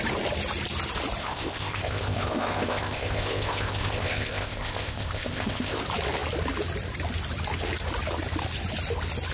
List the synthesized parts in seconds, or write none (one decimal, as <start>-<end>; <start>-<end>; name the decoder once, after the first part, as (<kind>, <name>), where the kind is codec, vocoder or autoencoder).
1.2-5.8 (codec, ZipCodec)